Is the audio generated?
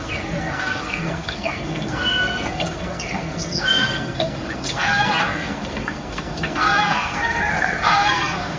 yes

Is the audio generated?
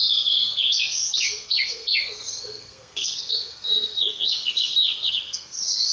yes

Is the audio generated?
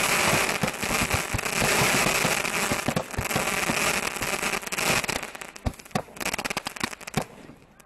no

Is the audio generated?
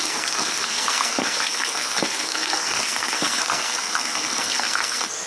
yes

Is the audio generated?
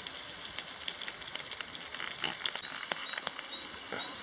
no